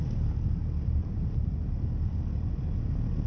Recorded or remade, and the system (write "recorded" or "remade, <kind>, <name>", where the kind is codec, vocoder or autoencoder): remade, vocoder, BigVGAN v2